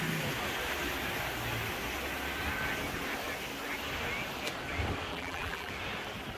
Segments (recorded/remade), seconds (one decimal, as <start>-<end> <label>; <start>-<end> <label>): 0.0-5.1 recorded; 5.1-5.7 remade; 5.7-6.4 recorded